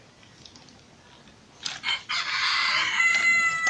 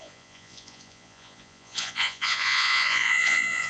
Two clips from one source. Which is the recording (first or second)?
first